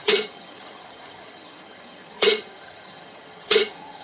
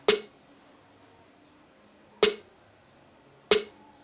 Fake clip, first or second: first